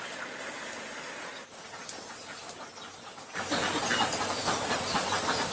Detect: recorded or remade recorded